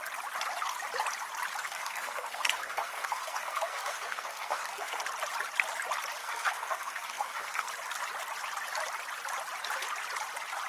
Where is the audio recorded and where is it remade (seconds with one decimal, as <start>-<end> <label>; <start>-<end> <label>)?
0.0-1.6 recorded; 1.6-5.0 remade; 5.0-6.2 recorded; 6.2-7.7 remade; 7.7-10.7 recorded